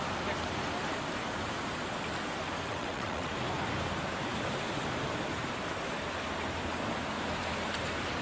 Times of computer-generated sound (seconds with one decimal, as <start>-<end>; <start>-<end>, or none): 2.7-3.3